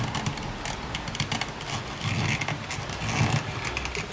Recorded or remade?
recorded